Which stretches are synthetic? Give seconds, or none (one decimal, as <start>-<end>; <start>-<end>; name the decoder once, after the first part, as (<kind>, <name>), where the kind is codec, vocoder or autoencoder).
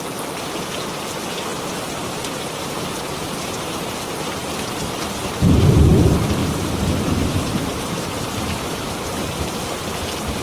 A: 1.5-3.9 (vocoder, BigVGAN v2); 4.4-5.8; 6.4-9.4